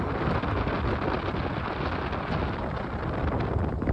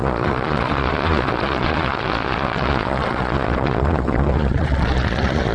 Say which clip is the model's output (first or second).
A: second